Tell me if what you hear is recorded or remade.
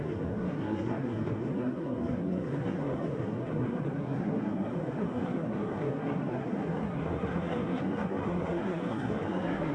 remade